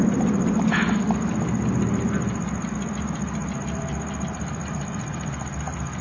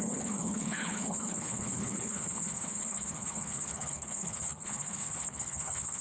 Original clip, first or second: first